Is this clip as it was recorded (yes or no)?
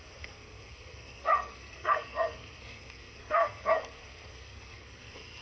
no